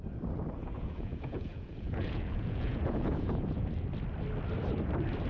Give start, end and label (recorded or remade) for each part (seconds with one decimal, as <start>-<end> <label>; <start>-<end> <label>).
0.0-0.6 recorded; 0.6-3.7 remade; 3.7-5.3 recorded

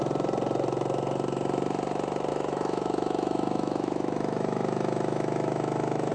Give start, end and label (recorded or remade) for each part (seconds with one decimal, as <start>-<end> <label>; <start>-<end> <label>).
0.0-2.3 recorded; 2.3-6.1 remade

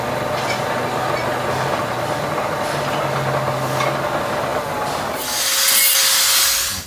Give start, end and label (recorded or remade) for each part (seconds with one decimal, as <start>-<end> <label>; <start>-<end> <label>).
0.0-4.5 recorded; 4.5-5.2 remade; 5.2-6.9 recorded

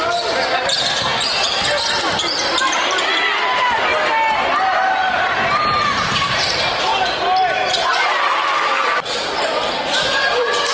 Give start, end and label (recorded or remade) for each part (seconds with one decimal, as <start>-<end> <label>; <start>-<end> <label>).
0.0-2.5 recorded; 2.5-3.9 remade; 3.9-5.5 recorded; 5.5-6.9 remade; 6.9-7.9 recorded; 7.9-10.7 remade

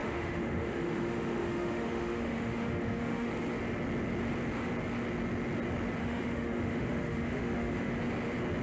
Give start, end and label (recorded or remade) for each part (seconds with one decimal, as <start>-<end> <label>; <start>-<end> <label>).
0.0-3.3 remade; 3.3-6.0 recorded; 6.0-7.9 remade; 7.9-8.6 recorded

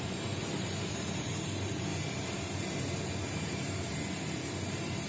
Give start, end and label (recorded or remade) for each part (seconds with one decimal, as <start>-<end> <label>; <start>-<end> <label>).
0.0-1.9 remade; 1.9-5.1 recorded

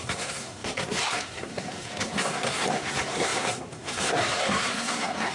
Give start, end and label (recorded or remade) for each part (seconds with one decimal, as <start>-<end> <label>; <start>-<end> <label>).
0.0-5.3 remade